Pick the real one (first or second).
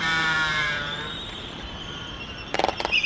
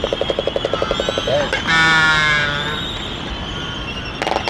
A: second